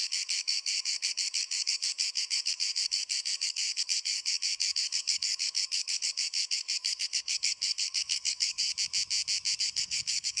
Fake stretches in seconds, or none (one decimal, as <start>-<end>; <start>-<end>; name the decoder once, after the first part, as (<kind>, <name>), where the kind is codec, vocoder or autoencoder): 0.0-8.7 (codec, SNAC); 9.6-10.4